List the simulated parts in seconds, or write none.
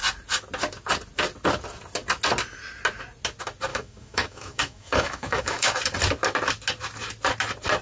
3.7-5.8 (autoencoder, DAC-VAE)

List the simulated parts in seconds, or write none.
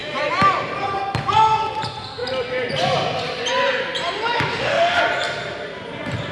4.5-5.0 (autoencoder, DAC-VAE)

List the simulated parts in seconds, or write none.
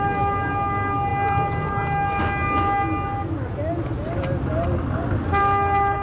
none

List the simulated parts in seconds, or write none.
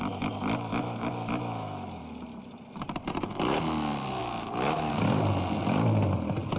0.7-2.0 (autoencoder, DAC-VAE); 4.2-4.9